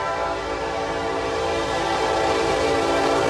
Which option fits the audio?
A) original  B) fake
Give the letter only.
A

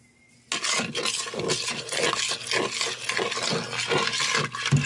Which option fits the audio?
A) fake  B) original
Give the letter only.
B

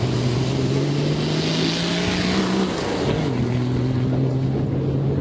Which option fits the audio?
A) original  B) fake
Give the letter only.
A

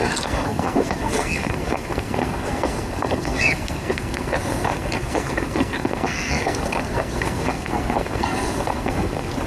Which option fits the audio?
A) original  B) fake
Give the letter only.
B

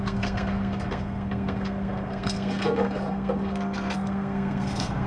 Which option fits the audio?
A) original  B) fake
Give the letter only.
B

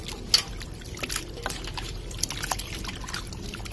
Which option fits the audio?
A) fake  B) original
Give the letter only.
B